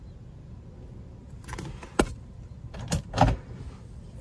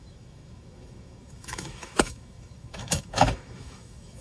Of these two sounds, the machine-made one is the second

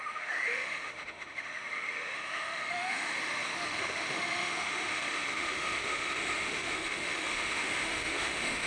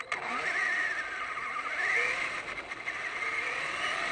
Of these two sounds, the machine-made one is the first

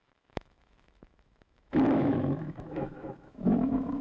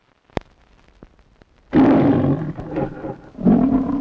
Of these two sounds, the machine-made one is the first